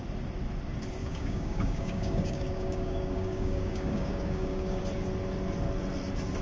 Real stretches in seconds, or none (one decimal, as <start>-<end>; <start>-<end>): 0.0-1.0; 4.8-6.4